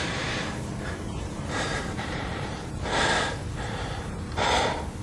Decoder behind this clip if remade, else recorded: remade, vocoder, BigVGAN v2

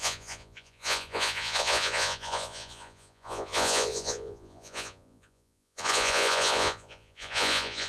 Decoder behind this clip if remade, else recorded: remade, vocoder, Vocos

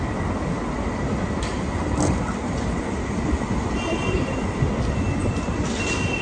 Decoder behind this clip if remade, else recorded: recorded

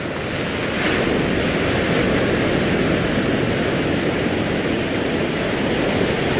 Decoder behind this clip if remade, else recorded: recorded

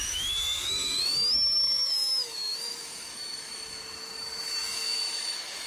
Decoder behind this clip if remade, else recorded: remade, autoencoder, DAC-VAE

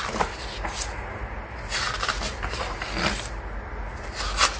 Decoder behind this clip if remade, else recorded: recorded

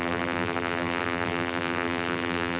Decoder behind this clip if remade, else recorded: remade, vocoder, BigVGAN v2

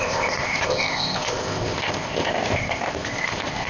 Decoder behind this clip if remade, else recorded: remade, codec, ZipCodec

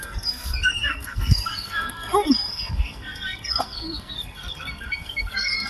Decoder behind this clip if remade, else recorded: remade, codec, SNAC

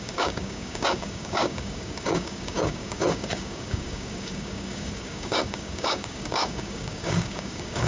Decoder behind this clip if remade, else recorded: remade, codec, DAC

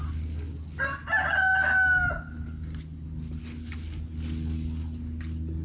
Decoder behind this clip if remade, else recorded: recorded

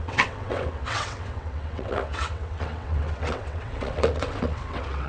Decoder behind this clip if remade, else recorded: remade, vocoder, WaveNeXt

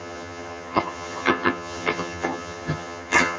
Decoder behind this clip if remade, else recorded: remade, vocoder, HiFi-GAN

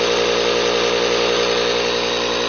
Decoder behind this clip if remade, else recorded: recorded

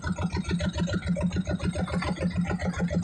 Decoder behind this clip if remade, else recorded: recorded